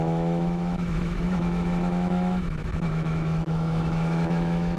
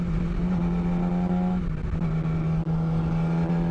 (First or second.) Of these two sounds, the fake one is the first